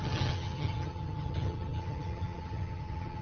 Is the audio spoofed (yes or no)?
yes